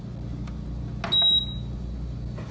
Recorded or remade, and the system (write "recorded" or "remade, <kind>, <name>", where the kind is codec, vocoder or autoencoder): recorded